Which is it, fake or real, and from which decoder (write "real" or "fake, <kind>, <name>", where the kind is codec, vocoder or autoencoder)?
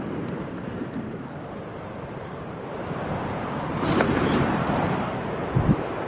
fake, vocoder, BigVGAN v2